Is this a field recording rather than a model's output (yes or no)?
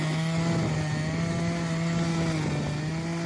yes